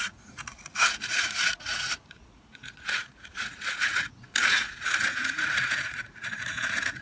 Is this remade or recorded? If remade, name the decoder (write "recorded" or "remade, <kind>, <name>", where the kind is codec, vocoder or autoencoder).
remade, vocoder, Vocos